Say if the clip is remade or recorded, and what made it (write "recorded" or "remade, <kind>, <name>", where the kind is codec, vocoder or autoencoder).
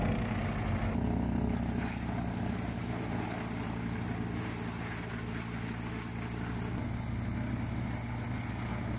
recorded